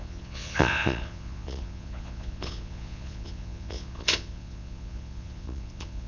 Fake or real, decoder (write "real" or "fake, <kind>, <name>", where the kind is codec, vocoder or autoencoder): fake, vocoder, Vocos